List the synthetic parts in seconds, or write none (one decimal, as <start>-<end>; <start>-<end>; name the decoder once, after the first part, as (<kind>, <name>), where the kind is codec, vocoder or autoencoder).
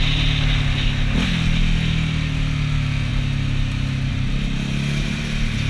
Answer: none